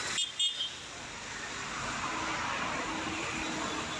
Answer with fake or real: real